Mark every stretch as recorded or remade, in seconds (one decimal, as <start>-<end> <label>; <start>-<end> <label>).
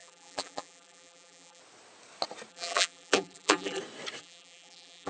0.0-1.6 remade; 1.6-2.5 recorded; 2.5-3.8 remade; 3.8-4.2 recorded; 4.2-5.1 remade